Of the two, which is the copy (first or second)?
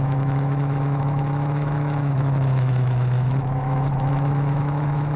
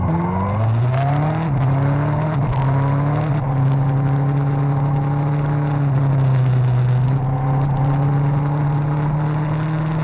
first